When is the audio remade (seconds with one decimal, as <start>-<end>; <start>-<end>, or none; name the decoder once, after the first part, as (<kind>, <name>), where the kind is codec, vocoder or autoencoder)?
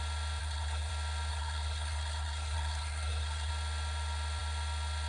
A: 0.4-0.9 (codec, SNAC); 1.3-3.5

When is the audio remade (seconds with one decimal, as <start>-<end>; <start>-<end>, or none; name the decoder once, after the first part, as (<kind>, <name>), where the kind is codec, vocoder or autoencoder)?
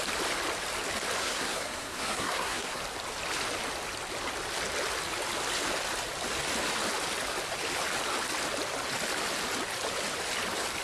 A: 1.2-2.8 (codec, SNAC)